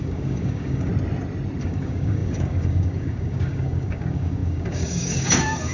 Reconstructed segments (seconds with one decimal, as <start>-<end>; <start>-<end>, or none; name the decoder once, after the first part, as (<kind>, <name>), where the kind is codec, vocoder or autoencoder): 0.0-0.9 (codec, DAC); 1.6-5.7